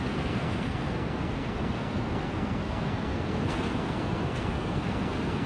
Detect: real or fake fake